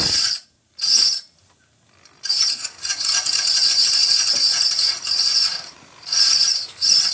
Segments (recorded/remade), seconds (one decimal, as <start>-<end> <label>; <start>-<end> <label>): 0.0-0.7 remade; 0.7-2.3 recorded; 2.3-7.1 remade

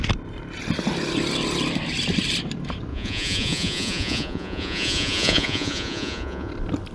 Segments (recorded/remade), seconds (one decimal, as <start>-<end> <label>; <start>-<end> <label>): 0.0-2.9 recorded; 2.9-6.5 remade; 6.5-6.9 recorded

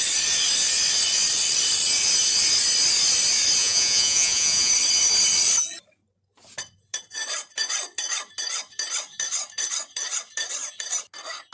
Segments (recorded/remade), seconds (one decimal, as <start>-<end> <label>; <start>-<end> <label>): 0.0-3.6 recorded; 3.6-4.7 remade; 4.7-11.5 recorded

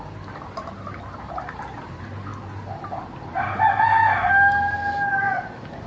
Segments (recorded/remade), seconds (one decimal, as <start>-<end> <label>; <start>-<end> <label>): 0.0-5.9 recorded

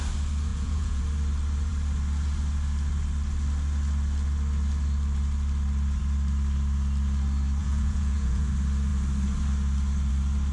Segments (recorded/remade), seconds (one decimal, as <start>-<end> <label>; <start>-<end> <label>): 0.0-0.5 recorded; 0.5-1.0 remade; 1.0-7.6 recorded; 7.6-8.5 remade; 8.5-10.5 recorded

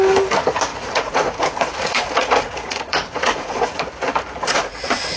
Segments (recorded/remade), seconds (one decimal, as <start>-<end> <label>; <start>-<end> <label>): 0.0-0.7 recorded; 0.7-3.8 remade; 3.8-4.4 recorded; 4.4-5.2 remade